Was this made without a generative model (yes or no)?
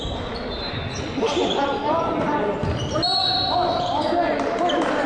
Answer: yes